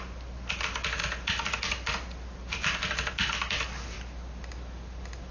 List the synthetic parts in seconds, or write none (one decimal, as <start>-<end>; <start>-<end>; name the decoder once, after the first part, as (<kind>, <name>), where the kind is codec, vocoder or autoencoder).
none